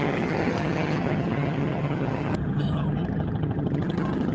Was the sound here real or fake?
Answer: fake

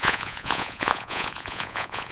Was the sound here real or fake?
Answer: fake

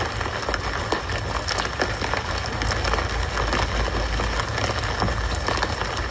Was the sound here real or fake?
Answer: real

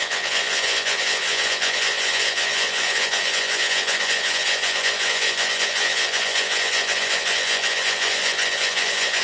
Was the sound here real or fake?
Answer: fake